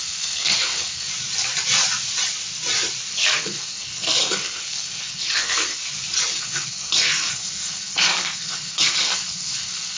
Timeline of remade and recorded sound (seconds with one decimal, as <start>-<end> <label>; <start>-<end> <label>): 0.0-1.1 remade; 1.1-3.1 recorded; 3.1-5.8 remade; 5.8-6.4 recorded; 6.4-10.0 remade